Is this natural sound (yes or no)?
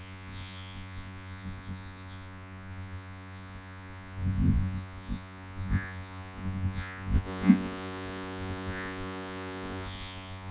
no